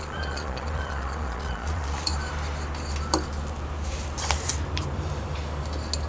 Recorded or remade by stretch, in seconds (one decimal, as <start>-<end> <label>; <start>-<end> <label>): 0.0-2.1 remade; 2.1-6.1 recorded

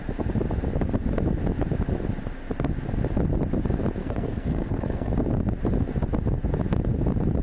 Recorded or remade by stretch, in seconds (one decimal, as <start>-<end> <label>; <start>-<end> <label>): 0.0-4.0 recorded; 4.0-5.1 remade; 5.1-7.4 recorded

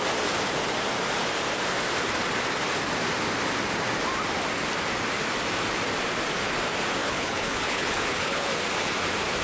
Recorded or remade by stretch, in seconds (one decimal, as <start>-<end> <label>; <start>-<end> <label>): 0.0-7.0 recorded; 7.0-8.5 remade; 8.5-9.4 recorded

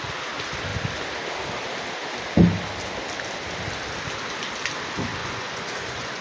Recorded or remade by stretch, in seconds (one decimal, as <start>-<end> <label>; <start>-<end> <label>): 0.0-5.2 recorded; 5.2-6.2 remade

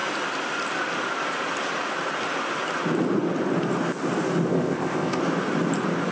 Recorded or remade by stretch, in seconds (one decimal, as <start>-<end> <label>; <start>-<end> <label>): 0.0-4.5 recorded; 4.5-5.2 remade; 5.2-6.1 recorded